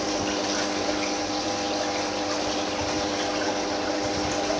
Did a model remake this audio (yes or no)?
no